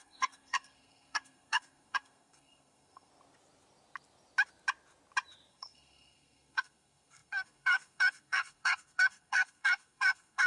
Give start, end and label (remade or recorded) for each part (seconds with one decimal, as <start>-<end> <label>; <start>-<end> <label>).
0.0-3.1 remade; 3.1-5.5 recorded; 5.5-10.5 remade

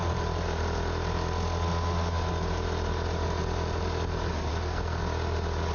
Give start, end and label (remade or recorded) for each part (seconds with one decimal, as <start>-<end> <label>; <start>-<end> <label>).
0.0-4.5 recorded; 4.5-5.0 remade; 5.0-5.7 recorded